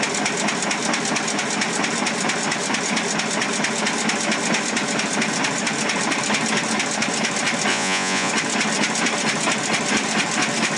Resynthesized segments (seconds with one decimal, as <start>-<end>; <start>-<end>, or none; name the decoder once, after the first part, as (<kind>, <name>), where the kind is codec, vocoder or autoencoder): 7.7-8.3 (vocoder, Vocos)